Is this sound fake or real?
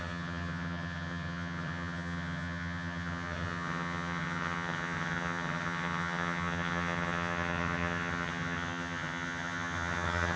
fake